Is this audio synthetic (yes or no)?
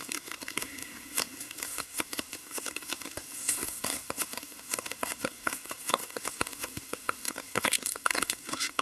yes